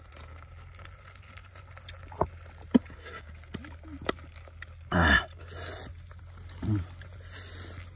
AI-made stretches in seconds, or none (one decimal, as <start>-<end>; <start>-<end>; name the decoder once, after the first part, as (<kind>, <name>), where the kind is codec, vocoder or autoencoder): 2.8-3.3 (codec, DAC)